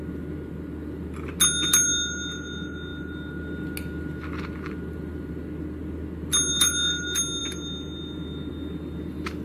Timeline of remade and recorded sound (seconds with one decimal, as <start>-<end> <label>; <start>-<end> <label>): 0.0-9.4 recorded